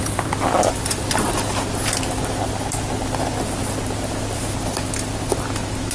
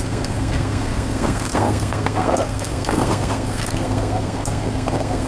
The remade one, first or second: second